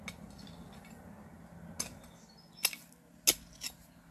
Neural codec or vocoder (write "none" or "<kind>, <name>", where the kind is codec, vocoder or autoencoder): none